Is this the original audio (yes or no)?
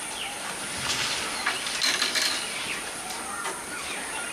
yes